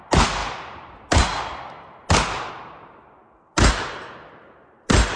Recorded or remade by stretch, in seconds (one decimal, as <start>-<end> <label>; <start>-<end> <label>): 0.0-5.2 recorded